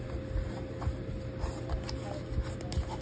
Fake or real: real